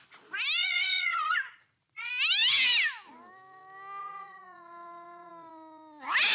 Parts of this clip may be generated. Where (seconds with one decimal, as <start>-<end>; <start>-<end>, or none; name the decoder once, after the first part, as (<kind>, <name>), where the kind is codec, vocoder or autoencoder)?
0.6-2.1 (vocoder, Vocos); 4.0-5.3